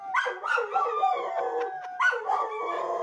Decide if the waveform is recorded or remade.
recorded